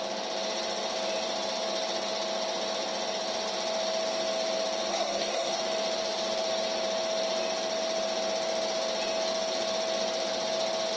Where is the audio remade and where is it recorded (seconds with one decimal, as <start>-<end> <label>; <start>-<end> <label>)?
0.0-4.9 recorded; 4.9-5.6 remade; 5.6-11.0 recorded